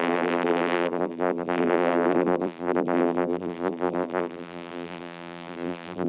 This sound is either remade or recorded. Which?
remade